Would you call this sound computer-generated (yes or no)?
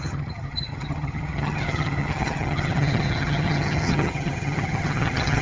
yes